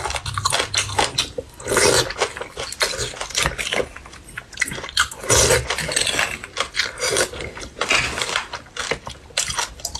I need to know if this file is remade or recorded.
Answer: recorded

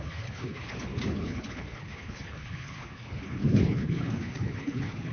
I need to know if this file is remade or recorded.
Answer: remade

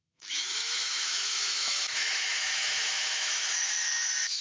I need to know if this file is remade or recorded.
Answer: remade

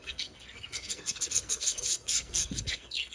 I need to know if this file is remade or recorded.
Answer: remade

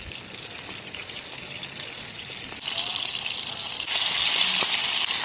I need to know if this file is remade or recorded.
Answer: recorded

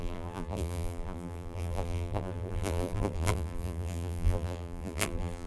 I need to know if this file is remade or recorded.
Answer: remade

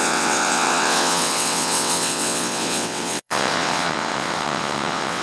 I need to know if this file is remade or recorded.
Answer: remade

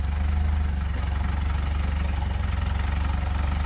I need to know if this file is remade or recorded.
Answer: recorded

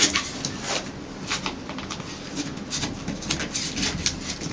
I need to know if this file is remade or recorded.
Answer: recorded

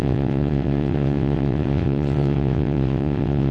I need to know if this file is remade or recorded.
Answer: remade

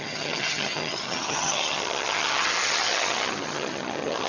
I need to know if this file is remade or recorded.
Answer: remade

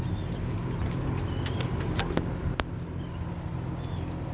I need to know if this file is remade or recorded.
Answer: recorded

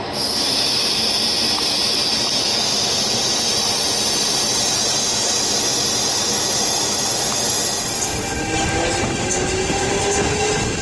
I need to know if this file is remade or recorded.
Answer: recorded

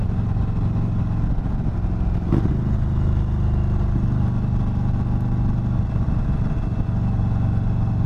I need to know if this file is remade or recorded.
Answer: recorded